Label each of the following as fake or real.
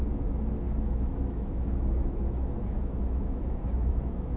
fake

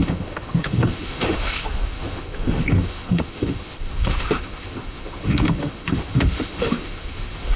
fake